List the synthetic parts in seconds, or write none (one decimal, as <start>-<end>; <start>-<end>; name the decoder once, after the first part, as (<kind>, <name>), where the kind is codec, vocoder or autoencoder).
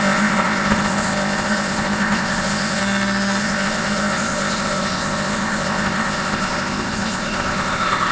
0.0-2.8 (codec, ZipCodec); 3.4-8.1